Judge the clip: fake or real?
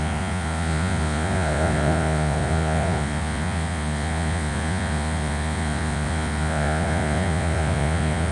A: fake